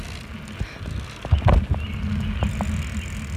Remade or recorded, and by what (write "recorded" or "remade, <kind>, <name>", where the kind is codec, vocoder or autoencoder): recorded